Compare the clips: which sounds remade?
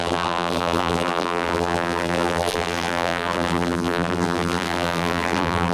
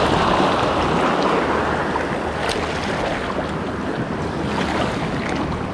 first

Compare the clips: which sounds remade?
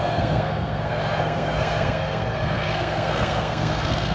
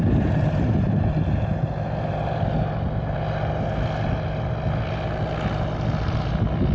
first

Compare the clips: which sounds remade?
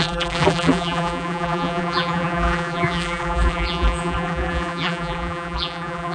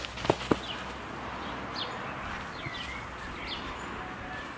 first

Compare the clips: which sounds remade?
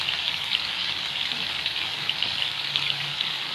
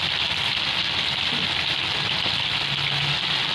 first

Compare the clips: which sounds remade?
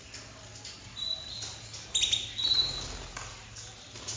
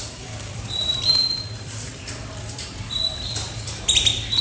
second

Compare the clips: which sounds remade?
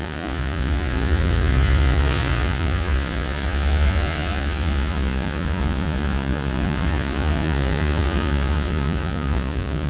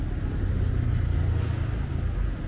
first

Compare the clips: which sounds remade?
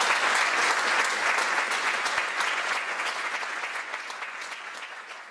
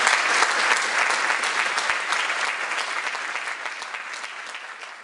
first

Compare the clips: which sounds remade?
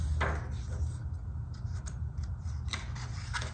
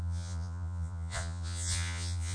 second